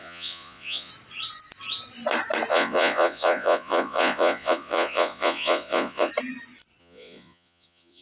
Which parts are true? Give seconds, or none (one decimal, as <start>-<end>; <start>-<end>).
0.9-2.5; 6.1-6.8